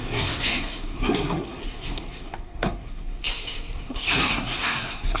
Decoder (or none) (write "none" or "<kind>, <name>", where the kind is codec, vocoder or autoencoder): codec, SNAC